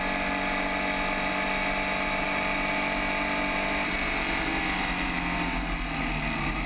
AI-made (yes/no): no